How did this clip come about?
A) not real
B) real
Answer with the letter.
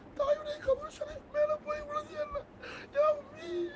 B